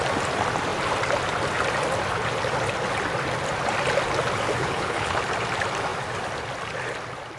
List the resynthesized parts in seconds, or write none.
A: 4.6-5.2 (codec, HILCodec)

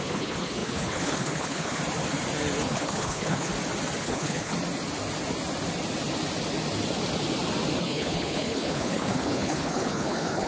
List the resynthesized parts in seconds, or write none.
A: 0.0-1.8 (codec, HILCodec); 2.6-3.5; 4.0-4.5; 7.8-10.5

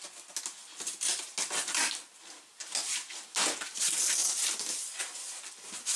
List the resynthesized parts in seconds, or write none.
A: none